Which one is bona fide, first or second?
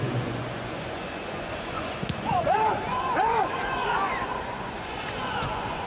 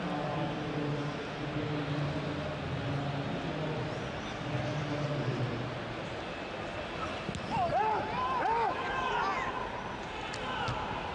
second